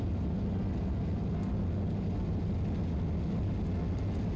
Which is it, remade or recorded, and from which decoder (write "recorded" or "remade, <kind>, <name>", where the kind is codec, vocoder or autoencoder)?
recorded